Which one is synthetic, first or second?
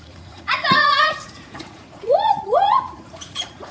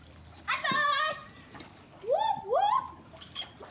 first